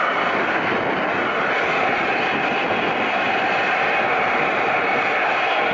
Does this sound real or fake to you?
real